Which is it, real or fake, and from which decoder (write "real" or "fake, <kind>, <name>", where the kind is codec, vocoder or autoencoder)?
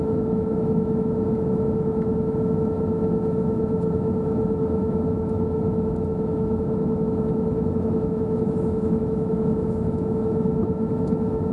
fake, autoencoder, DAC-VAE